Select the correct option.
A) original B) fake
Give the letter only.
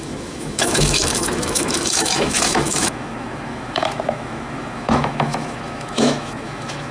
B